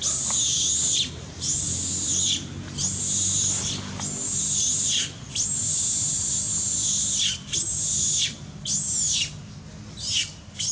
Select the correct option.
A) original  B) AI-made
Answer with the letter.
A